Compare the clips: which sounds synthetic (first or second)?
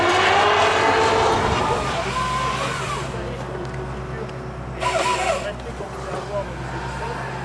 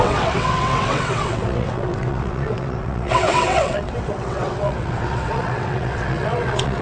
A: second